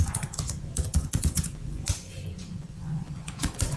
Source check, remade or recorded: remade